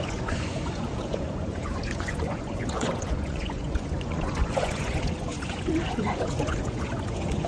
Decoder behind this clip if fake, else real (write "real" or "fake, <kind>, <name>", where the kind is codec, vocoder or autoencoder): fake, vocoder, Vocos